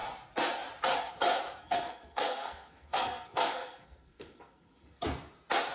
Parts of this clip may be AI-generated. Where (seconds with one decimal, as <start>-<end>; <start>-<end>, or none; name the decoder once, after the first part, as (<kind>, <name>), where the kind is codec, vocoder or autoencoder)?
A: 1.6-5.0 (codec, SNAC)